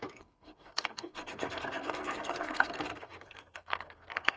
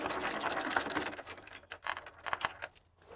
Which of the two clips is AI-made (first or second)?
first